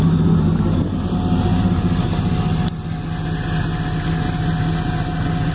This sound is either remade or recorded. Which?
recorded